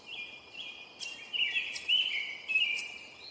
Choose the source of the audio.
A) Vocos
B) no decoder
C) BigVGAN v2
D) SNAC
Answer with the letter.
B